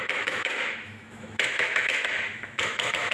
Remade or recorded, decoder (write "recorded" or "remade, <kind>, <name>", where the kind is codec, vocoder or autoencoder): remade, autoencoder, DAC-VAE